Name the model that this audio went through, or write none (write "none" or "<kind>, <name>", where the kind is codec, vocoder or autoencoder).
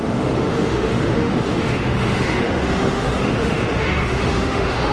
autoencoder, DAC-VAE